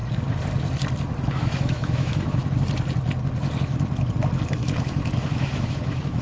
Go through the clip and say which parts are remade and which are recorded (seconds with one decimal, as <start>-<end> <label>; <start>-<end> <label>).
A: 0.0-1.3 recorded; 1.3-2.4 remade; 2.4-4.6 recorded; 4.6-6.2 remade